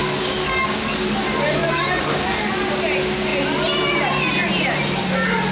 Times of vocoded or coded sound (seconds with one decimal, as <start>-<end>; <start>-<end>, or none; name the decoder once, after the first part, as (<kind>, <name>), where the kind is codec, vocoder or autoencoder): 0.0-1.2 (codec, DAC); 1.6-2.5